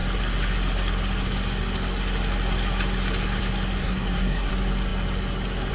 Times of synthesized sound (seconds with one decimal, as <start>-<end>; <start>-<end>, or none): 3.8-4.5

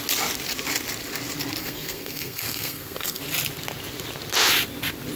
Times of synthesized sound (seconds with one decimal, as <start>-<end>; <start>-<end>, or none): 1.6-3.2